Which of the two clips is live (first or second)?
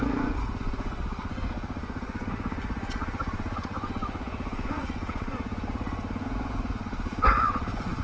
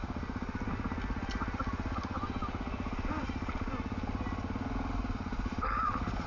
second